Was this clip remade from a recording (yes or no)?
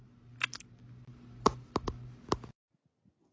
no